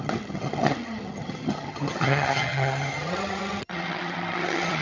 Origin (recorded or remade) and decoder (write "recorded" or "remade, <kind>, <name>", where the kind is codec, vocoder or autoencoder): remade, vocoder, HiFi-GAN